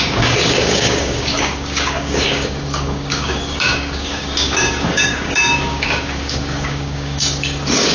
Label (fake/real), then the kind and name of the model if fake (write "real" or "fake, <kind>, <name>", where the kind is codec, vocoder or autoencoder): fake, codec, DAC